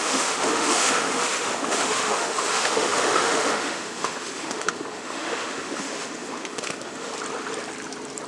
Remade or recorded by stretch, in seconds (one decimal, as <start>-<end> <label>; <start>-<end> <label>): 0.0-7.1 remade; 7.1-8.3 recorded